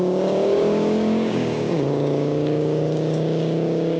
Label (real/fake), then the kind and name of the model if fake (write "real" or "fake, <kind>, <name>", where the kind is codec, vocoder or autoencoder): fake, codec, DAC